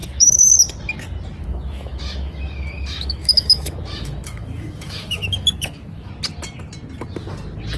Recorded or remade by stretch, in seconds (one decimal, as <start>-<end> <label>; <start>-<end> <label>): 0.0-0.5 remade; 0.5-1.4 recorded; 1.4-6.1 remade; 6.1-7.8 recorded